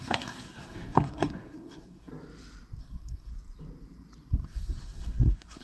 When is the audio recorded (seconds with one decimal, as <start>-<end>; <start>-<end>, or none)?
2.1-2.8; 3.3-4.3